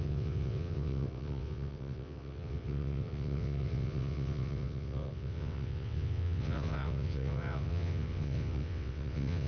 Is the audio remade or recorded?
remade